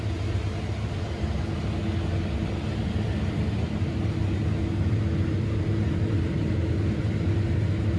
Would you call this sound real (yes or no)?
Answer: yes